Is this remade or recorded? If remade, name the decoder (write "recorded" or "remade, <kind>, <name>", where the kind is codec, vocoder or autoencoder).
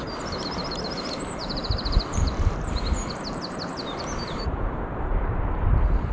remade, vocoder, BigVGAN v2